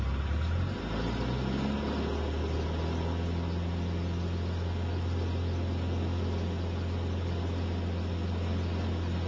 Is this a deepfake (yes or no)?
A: no